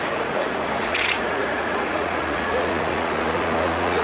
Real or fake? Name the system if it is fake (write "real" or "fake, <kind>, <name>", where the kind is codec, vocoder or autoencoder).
fake, vocoder, Vocos